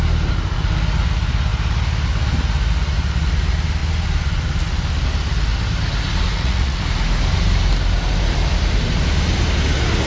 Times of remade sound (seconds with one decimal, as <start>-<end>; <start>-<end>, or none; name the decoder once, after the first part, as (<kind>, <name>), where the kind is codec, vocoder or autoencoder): 6.3-6.8 (vocoder, Vocos)